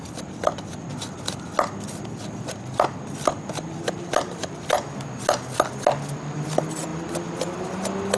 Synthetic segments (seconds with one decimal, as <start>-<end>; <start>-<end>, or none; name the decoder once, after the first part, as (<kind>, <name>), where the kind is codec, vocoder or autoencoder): none